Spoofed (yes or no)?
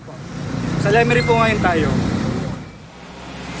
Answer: no